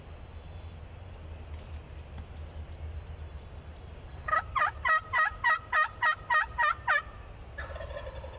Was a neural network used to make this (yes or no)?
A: no